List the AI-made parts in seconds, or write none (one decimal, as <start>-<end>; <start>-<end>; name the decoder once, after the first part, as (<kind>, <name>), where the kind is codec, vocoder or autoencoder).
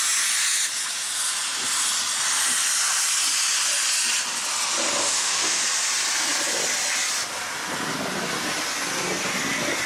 5.0-5.6 (autoencoder, DAC-VAE)